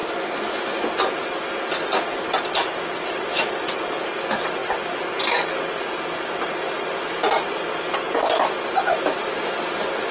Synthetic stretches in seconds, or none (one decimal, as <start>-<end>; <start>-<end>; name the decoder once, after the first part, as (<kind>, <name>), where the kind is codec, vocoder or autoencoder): none